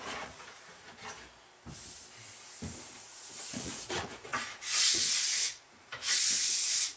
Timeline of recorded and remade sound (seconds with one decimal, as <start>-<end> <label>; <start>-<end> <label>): 0.0-0.9 remade; 0.9-2.8 recorded; 2.8-7.0 remade